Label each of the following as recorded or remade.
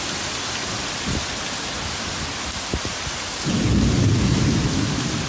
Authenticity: recorded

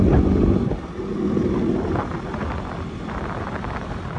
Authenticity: recorded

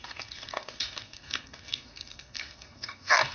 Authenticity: remade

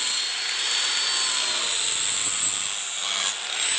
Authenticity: recorded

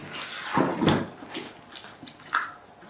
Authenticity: recorded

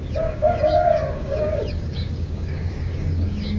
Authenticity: remade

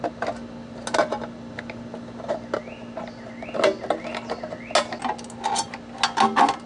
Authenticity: recorded